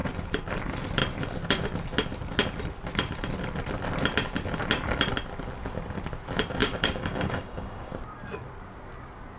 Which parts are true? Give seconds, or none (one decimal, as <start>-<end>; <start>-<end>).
0.0-6.6; 7.9-9.4